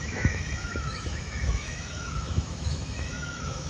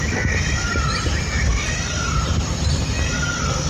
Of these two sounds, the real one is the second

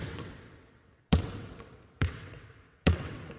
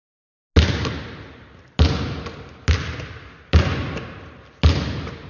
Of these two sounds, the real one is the second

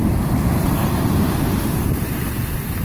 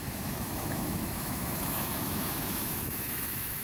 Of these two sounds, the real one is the first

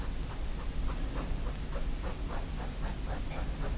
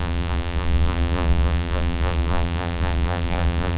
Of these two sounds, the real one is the first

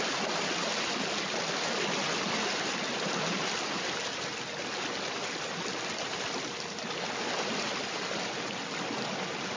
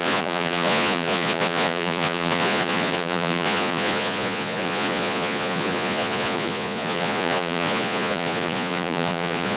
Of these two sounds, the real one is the first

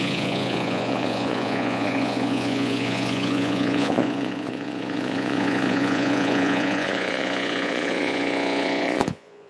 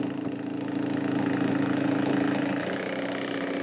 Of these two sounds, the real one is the second